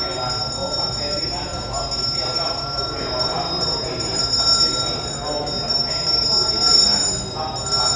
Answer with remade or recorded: recorded